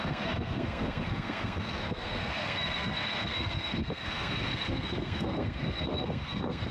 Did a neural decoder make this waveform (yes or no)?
yes